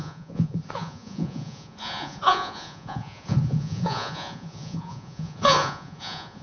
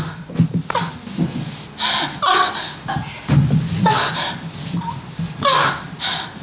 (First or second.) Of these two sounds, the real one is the second